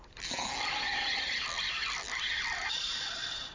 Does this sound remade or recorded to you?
remade